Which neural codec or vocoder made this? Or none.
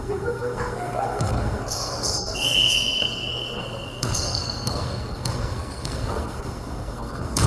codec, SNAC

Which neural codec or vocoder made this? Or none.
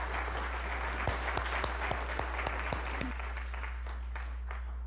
none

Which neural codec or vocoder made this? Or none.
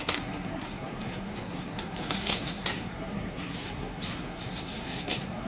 codec, SNAC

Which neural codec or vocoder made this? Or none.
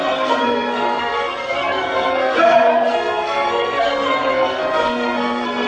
codec, SNAC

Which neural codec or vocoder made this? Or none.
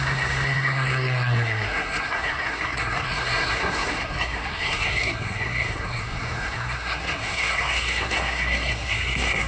codec, SNAC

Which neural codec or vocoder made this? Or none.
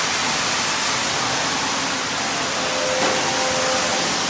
none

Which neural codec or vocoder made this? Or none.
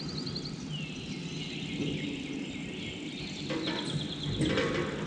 none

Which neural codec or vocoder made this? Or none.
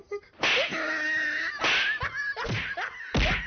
none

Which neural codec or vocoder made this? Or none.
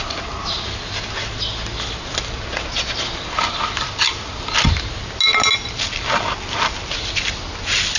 none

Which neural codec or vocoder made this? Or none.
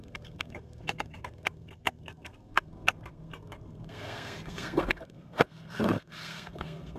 codec, SNAC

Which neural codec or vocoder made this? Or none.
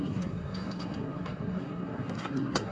codec, SNAC